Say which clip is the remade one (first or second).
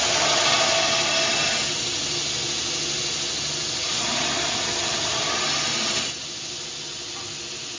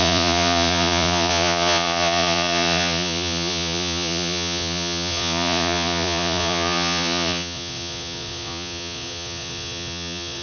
second